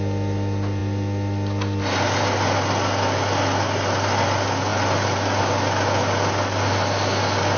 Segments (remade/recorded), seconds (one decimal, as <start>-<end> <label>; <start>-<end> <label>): 0.0-7.6 recorded